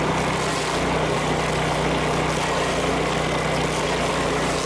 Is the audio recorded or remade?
recorded